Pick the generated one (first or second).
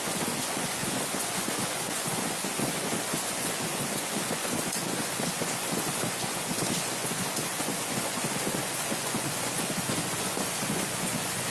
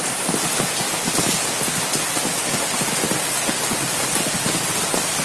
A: first